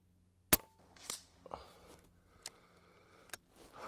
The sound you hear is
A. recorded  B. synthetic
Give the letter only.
A